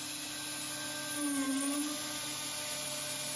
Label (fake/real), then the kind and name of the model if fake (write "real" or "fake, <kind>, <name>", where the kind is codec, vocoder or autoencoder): real